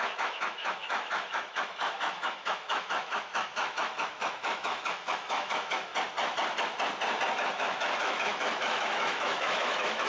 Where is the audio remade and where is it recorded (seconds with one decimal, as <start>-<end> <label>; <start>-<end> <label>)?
0.0-5.9 remade; 5.9-7.3 recorded; 7.3-10.1 remade